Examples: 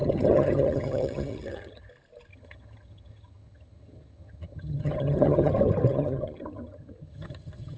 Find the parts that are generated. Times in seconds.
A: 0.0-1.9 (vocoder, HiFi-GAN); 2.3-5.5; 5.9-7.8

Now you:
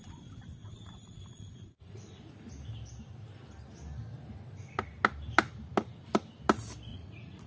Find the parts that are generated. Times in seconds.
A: 0.6-2.2 (vocoder, Vocos); 6.9-7.5

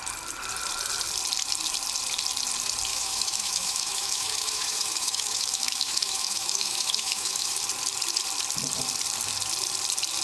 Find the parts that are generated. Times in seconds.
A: 2.9-7.6 (autoencoder, DAC-VAE)